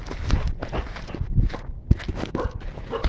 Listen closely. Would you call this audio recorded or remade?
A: recorded